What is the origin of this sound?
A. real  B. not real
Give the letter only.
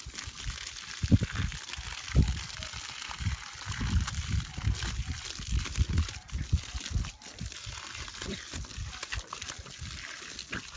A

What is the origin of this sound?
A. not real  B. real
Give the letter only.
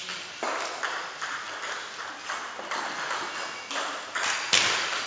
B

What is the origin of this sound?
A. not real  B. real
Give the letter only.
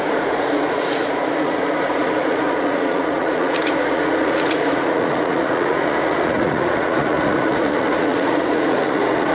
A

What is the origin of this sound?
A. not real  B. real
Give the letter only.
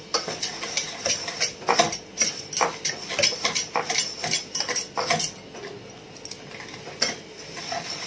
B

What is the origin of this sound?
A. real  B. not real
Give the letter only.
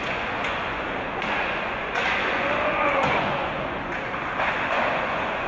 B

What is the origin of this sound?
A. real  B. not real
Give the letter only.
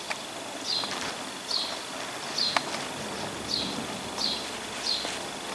A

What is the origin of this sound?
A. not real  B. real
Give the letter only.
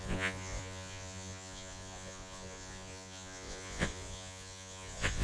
A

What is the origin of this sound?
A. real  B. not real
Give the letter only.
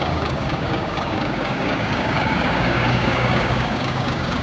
B